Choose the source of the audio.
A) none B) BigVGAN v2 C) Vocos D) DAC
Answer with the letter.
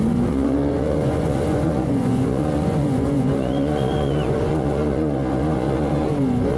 C